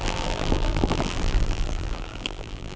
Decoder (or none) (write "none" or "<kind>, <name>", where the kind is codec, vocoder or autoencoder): vocoder, BigVGAN v2